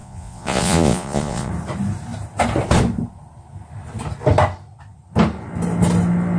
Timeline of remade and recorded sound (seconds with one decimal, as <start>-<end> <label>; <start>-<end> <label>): 0.0-1.5 remade; 1.5-6.4 recorded